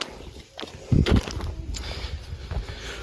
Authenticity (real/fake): real